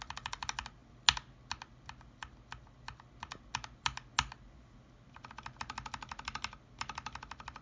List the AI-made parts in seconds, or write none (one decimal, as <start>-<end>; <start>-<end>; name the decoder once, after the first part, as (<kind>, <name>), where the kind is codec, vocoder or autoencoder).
none